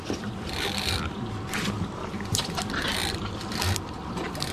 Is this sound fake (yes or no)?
yes